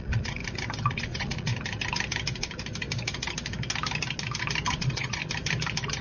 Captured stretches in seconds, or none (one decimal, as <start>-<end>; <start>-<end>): 0.4-0.9; 1.5-4.7; 5.2-6.0